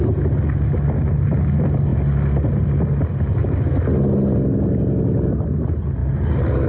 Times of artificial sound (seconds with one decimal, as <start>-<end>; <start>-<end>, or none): none